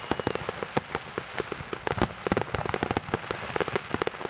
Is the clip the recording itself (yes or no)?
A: yes